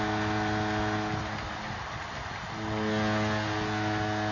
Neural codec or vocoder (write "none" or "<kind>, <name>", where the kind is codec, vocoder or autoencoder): none